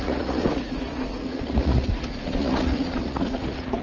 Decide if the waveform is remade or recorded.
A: remade